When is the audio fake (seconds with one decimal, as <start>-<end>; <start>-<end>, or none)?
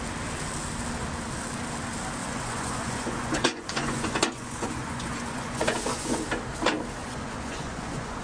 2.2-6.2; 7.0-8.2